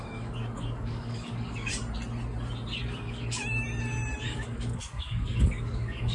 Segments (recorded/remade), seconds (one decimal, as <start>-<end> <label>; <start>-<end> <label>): 0.0-1.7 remade; 1.7-2.8 recorded; 2.8-3.4 remade; 3.4-4.2 recorded; 4.2-6.1 remade